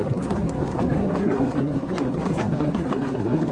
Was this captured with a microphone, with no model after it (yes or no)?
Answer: no